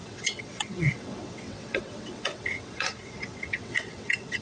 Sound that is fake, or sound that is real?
fake